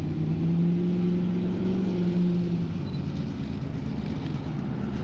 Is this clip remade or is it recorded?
recorded